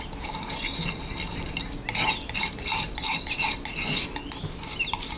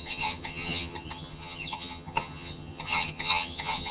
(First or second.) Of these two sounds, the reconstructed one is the second